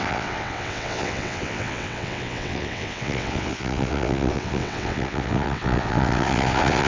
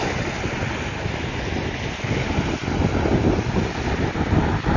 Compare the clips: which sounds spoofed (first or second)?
first